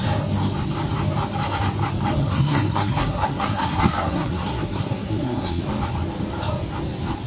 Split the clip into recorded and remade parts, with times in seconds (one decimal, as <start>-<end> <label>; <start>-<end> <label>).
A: 0.0-2.2 recorded; 2.2-5.6 remade; 5.6-7.3 recorded